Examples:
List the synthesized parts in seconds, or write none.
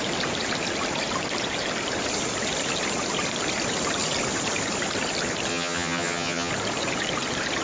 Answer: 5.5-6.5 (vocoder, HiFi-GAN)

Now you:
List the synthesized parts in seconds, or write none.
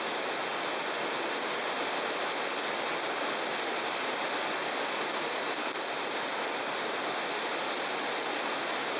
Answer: none